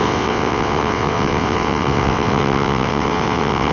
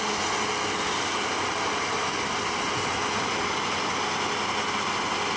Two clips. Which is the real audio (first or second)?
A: second